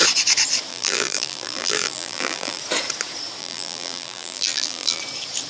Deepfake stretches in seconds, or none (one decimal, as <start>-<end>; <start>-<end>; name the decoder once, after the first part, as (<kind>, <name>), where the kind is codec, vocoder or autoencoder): 0.7-2.6 (vocoder, BigVGAN v2); 3.4-5.0